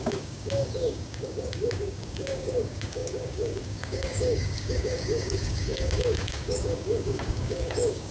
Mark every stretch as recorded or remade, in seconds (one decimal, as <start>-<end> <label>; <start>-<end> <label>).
0.0-8.1 remade